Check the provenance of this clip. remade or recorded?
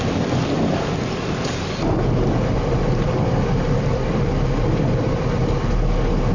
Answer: recorded